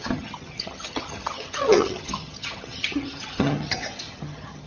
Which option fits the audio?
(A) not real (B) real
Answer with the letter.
A